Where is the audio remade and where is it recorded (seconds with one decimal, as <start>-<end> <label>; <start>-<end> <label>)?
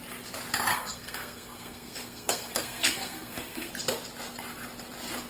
0.0-0.7 recorded; 0.7-3.7 remade; 3.7-5.3 recorded